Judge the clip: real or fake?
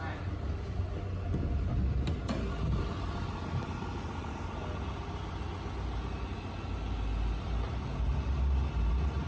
real